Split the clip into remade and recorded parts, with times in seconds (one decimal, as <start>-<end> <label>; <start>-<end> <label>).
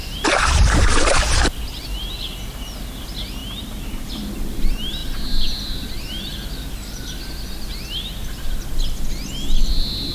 0.0-1.4 remade; 1.4-3.4 recorded; 3.4-4.1 remade; 4.1-10.1 recorded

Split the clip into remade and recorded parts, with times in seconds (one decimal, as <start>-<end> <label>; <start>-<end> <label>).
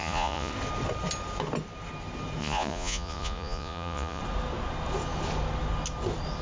0.0-0.5 remade; 0.5-2.4 recorded; 2.4-4.2 remade; 4.2-6.4 recorded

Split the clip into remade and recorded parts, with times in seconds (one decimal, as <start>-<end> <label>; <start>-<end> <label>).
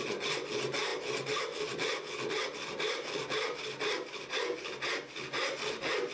0.0-6.1 recorded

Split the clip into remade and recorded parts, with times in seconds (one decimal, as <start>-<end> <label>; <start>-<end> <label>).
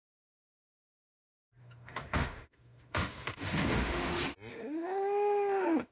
0.0-1.6 recorded; 1.6-4.1 remade; 4.1-4.5 recorded; 4.5-5.9 remade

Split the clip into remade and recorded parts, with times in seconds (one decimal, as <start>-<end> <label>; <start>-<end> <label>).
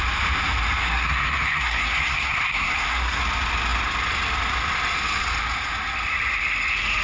0.0-0.8 recorded; 0.8-3.2 remade; 3.2-7.0 recorded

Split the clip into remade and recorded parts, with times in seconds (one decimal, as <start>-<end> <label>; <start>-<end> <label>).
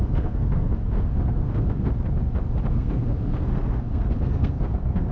0.0-1.9 remade; 1.9-2.7 recorded; 2.7-5.1 remade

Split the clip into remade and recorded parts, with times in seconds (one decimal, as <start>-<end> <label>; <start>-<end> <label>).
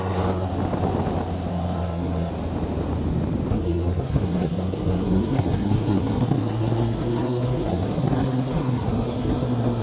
0.0-0.5 remade; 0.5-1.5 recorded; 1.5-2.3 remade; 2.3-3.5 recorded; 3.5-9.8 remade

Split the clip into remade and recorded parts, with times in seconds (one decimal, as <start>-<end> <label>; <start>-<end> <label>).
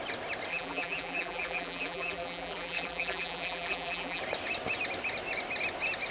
0.0-0.5 recorded; 0.5-4.2 remade; 4.2-6.1 recorded